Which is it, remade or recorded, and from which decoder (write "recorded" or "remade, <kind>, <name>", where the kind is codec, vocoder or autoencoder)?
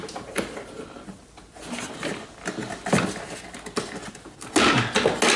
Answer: recorded